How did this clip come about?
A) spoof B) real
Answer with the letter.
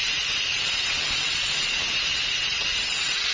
A